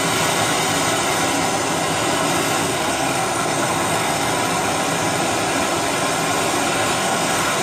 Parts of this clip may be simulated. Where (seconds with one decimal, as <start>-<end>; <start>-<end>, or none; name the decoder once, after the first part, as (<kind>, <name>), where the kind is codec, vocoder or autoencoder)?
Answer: 2.6-4.3 (codec, SNAC); 6.7-7.6